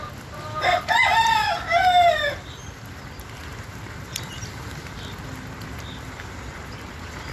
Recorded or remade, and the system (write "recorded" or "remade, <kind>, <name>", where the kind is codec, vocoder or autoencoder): recorded